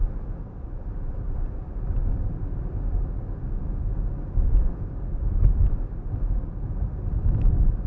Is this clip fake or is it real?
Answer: fake